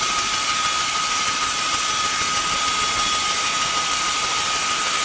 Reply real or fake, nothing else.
real